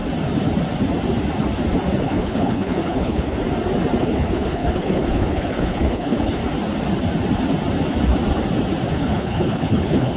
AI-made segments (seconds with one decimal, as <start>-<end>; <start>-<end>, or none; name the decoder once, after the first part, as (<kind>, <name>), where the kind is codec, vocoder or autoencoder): 2.0-3.4 (codec, HILCodec); 4.0-6.4; 8.9-10.2